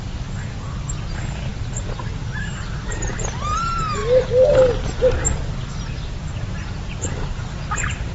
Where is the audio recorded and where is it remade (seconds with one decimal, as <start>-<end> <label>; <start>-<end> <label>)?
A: 0.0-8.1 recorded